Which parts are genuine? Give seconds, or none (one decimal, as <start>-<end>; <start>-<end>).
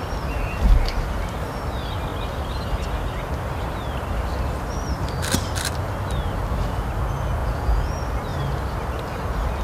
0.0-7.4; 7.9-9.6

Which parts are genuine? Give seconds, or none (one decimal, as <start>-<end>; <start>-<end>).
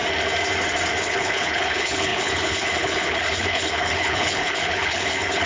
0.0-1.0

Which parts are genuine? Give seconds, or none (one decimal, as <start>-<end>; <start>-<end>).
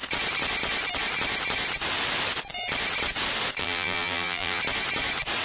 0.0-3.6; 4.6-5.4